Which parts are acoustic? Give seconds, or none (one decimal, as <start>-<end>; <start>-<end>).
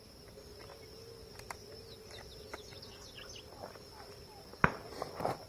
0.0-5.5